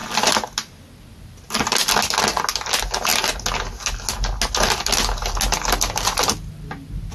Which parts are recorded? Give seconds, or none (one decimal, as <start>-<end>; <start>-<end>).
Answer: 0.0-7.1